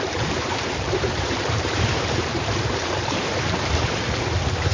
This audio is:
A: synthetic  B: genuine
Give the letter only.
A